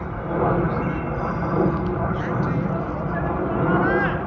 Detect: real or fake real